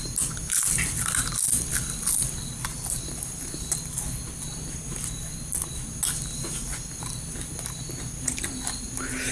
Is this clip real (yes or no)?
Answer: yes